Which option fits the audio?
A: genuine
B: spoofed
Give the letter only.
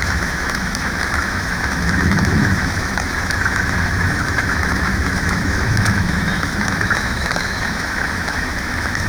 B